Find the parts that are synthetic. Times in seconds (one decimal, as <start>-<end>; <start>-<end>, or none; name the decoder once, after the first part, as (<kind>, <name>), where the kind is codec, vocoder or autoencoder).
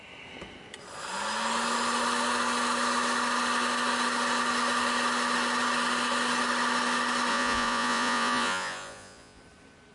7.3-9.4 (vocoder, Vocos)